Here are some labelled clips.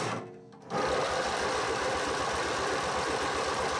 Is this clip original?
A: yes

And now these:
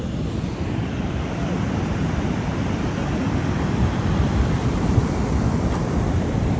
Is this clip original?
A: no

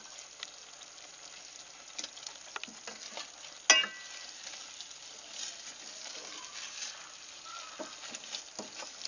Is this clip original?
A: yes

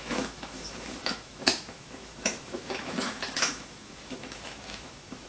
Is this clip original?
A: no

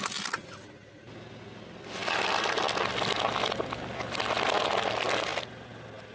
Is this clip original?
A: yes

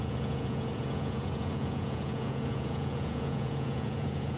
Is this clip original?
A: no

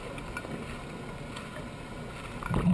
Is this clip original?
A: yes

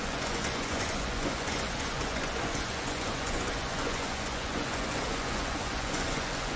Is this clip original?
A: no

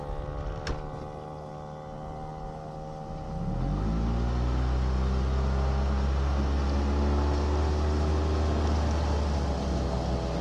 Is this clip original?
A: yes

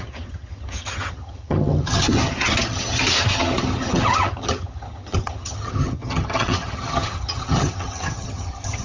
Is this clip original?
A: no